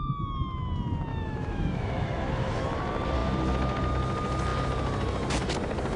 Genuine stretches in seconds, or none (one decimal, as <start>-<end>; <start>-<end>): 0.0-1.1; 2.6-6.0